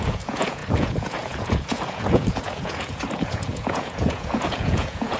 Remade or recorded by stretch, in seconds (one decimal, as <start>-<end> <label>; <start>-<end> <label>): 0.0-5.2 remade